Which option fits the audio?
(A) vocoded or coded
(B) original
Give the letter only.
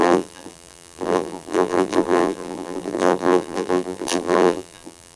A